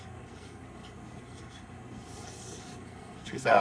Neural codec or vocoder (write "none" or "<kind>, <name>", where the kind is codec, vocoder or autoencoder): codec, SNAC